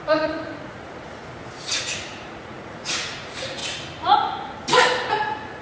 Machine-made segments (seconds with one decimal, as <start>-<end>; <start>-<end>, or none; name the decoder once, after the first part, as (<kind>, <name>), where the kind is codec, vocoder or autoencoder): 0.0-1.2 (vocoder, Vocos); 1.8-3.6; 5.1-5.6